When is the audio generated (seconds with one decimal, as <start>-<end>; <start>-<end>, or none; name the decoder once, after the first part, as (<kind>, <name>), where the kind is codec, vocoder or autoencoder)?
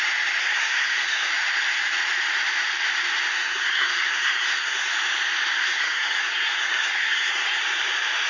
0.4-1.3 (codec, SNAC); 3.3-4.9; 5.6-7.6